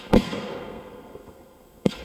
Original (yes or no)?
no